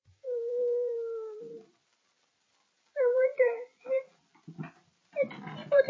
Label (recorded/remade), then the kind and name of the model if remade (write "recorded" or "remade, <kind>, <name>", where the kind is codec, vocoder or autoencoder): remade, vocoder, BigVGAN v2